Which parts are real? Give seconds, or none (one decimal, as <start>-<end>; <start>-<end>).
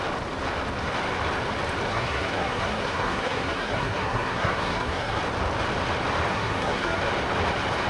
0.0-1.9; 5.2-6.3; 7.0-7.9